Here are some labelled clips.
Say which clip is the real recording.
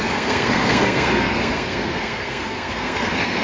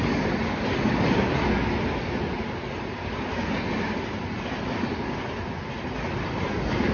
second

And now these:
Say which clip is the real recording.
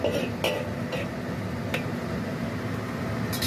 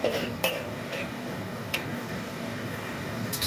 first